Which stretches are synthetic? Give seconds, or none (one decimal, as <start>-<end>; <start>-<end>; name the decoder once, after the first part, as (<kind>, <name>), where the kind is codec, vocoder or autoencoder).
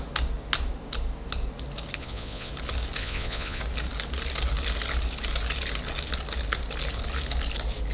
2.0-2.5 (vocoder, Vocos); 3.0-3.6